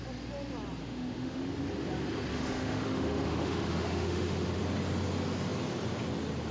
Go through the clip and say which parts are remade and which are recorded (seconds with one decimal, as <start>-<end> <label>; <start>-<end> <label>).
0.0-0.8 recorded; 0.8-1.5 remade; 1.5-2.3 recorded; 2.3-4.6 remade; 4.6-6.5 recorded